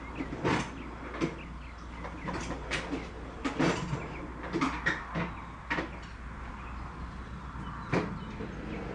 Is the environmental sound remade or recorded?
recorded